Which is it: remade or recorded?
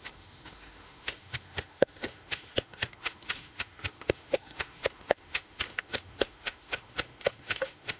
remade